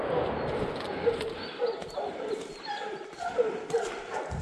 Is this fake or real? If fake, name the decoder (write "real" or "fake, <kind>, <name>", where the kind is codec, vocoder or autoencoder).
fake, vocoder, BigVGAN v2